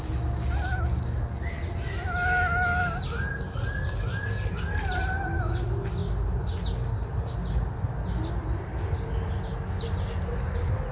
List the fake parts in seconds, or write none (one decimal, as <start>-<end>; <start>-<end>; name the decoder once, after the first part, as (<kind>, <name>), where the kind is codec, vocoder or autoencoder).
none